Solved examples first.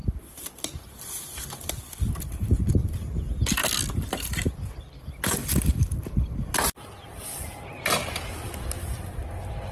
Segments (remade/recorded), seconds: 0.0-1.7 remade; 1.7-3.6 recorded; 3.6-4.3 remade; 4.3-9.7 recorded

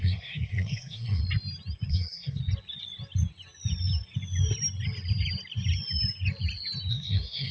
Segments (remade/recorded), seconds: 0.0-1.2 remade; 1.2-1.9 recorded; 1.9-2.4 remade; 2.4-6.9 recorded; 6.9-7.5 remade